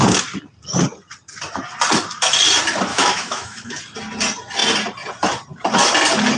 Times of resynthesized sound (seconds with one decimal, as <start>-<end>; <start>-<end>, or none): 2.9-3.8